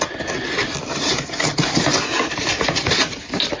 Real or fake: real